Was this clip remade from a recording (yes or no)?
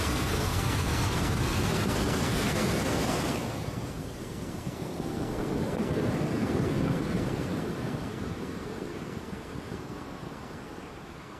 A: yes